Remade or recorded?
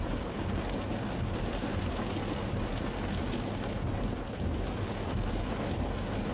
recorded